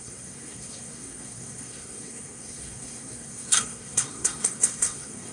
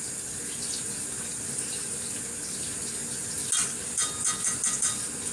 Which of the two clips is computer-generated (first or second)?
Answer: first